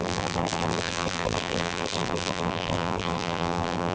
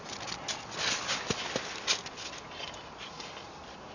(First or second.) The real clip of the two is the second